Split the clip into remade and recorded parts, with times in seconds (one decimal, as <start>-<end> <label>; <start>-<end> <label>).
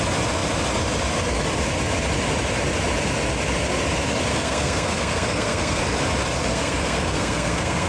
0.0-4.3 recorded; 4.3-5.8 remade; 5.8-6.5 recorded; 6.5-7.9 remade